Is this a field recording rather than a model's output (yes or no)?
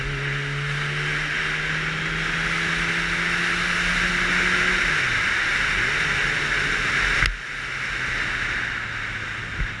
yes